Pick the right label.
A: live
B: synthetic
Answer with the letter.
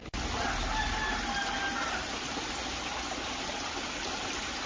A